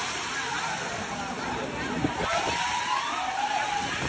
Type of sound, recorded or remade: recorded